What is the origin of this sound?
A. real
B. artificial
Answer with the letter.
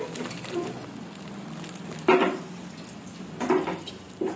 A